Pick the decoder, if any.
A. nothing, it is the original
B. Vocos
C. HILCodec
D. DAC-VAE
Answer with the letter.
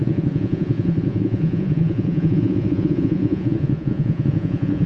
B